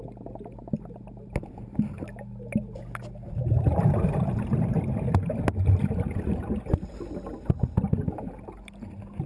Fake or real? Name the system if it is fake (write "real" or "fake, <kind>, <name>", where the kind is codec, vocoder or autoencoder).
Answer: real